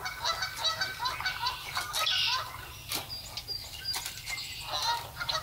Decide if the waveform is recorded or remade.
recorded